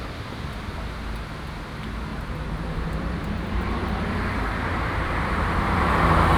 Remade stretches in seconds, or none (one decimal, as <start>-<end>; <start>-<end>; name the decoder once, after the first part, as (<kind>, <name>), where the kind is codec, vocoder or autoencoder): 2.1-5.9 (vocoder, BigVGAN v2)

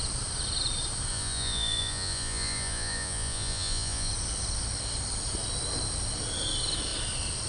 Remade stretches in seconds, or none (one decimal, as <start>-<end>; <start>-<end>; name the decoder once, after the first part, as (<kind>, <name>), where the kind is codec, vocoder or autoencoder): 1.1-4.1 (vocoder, Vocos)

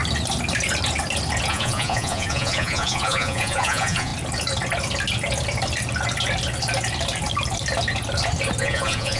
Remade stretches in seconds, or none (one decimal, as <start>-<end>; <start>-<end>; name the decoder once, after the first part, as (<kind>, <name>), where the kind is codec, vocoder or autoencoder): 1.5-4.1 (vocoder, Vocos); 8.6-9.2

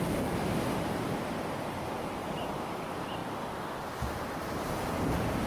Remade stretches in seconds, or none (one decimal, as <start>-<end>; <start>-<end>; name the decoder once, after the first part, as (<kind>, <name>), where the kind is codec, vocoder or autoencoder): none

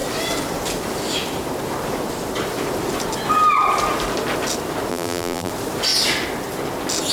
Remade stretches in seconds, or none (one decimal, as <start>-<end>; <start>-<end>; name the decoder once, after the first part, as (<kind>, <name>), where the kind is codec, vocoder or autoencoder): 4.9-5.5 (vocoder, BigVGAN v2)

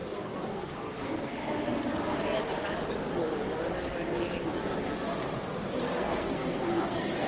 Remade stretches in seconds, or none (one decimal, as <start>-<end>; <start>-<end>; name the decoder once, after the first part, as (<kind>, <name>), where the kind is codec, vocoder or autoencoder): 0.0-1.4 (codec, SNAC); 5.8-7.3

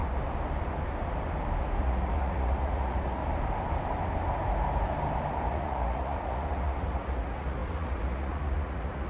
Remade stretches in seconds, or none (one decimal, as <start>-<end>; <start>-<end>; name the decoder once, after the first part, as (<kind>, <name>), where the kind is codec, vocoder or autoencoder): 1.8-3.2 (vocoder, Vocos); 5.5-9.1

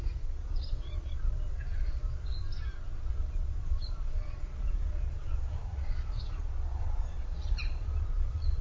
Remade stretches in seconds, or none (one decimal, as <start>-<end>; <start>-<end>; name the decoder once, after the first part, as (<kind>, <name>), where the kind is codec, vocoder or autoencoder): 0.0-2.4 (vocoder, Vocos); 3.1-8.6